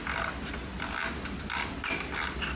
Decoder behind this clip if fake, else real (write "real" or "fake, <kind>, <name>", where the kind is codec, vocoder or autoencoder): real